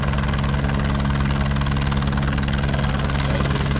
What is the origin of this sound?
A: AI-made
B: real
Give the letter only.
B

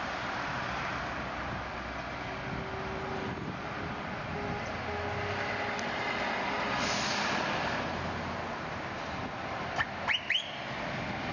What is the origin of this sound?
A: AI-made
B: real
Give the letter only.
B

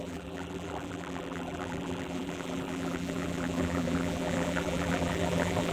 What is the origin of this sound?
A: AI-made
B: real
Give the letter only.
A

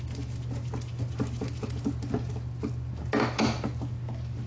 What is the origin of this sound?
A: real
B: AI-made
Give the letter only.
A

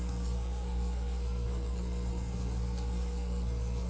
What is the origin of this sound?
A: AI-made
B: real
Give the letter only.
A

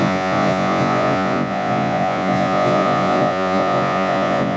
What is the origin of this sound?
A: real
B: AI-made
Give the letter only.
B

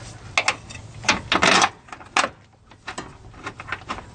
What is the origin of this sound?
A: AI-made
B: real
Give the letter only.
B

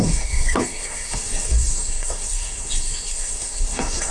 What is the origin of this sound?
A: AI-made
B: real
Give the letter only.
A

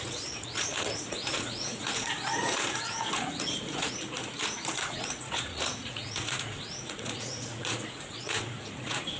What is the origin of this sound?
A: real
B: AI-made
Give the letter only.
B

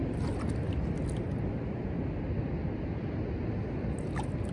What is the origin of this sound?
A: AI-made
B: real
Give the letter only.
B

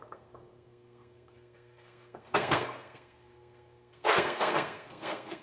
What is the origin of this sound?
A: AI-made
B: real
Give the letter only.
A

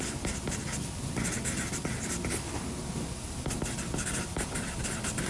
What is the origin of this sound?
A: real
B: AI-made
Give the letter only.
A